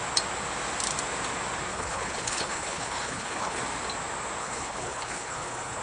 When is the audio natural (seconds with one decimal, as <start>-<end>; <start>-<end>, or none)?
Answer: 0.0-1.7; 3.6-4.4